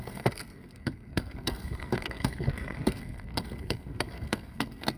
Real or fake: fake